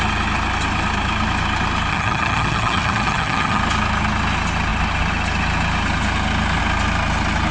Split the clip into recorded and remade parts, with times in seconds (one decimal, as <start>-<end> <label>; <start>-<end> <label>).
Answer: 0.0-1.9 recorded; 1.9-3.6 remade; 3.6-7.5 recorded